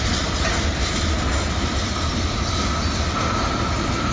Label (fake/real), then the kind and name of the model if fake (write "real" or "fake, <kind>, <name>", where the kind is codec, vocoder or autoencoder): real